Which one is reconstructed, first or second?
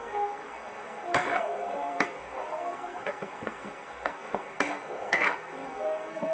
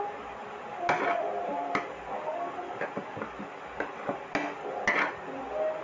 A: first